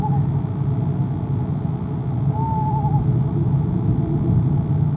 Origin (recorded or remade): recorded